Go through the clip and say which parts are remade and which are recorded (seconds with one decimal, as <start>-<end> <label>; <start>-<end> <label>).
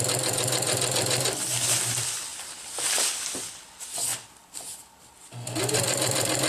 0.0-6.5 recorded